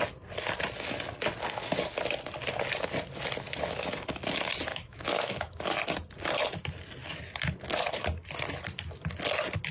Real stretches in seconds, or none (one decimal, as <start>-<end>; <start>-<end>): 0.0-4.7; 5.6-9.7